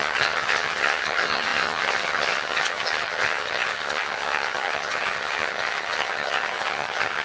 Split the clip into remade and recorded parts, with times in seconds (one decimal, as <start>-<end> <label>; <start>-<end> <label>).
0.0-7.2 remade